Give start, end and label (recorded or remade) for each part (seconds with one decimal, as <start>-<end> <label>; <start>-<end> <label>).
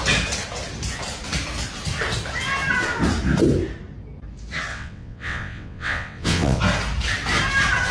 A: 0.0-4.7 recorded; 4.7-6.6 remade; 6.6-7.9 recorded